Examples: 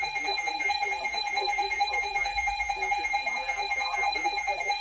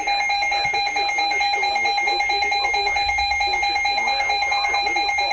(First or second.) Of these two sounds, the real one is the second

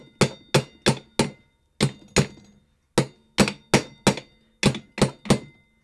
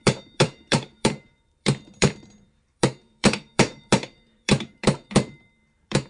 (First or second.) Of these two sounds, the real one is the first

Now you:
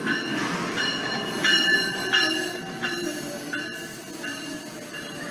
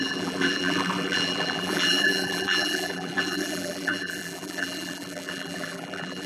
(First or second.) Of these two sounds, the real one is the first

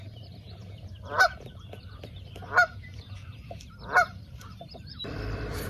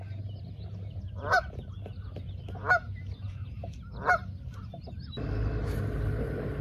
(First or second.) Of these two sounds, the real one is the second